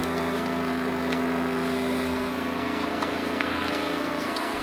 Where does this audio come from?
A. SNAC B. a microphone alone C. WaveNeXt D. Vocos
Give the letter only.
A